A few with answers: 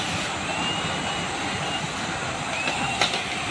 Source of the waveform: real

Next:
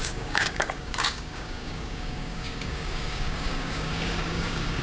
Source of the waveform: fake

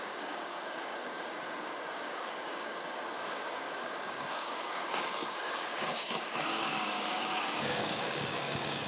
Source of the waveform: fake